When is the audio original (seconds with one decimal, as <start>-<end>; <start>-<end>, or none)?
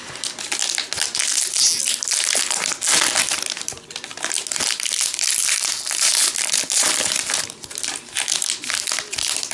0.0-9.5